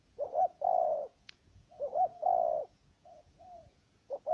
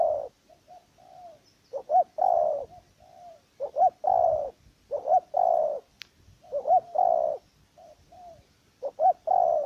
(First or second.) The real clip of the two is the second